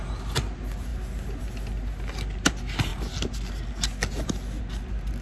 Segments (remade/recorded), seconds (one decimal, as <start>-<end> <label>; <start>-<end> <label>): 0.0-5.2 recorded